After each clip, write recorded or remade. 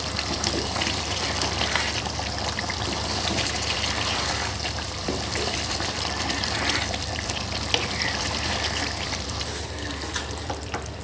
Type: remade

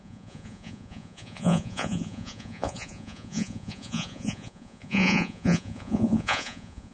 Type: remade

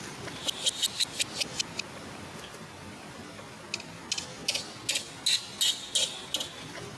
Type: recorded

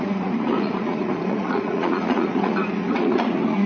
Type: remade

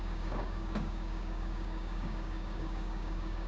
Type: remade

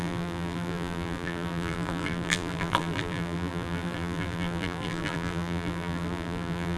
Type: remade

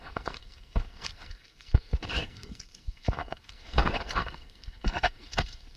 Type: remade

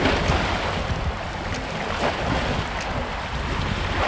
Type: recorded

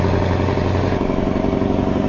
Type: recorded